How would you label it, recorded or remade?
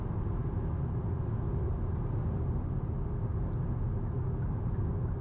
recorded